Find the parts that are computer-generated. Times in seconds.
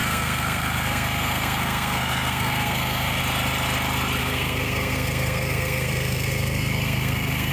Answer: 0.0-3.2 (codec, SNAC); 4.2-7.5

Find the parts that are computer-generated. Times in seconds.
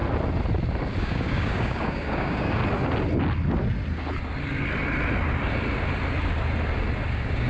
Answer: 1.0-2.6 (codec, DAC); 7.1-7.5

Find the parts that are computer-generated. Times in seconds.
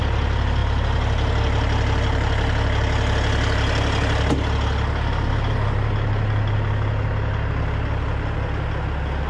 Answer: none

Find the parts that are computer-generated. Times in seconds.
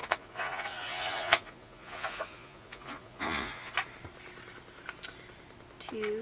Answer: 0.0-3.7 (vocoder, Vocos)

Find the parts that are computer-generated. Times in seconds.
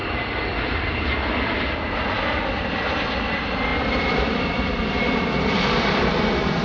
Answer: 3.7-6.0 (vocoder, BigVGAN v2)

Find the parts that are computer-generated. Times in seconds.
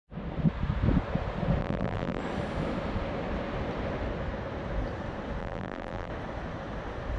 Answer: 1.6-2.2 (vocoder, BigVGAN v2); 5.4-6.1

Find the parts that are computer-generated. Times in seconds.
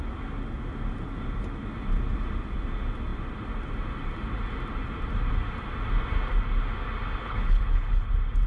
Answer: 7.2-8.1 (codec, HILCodec)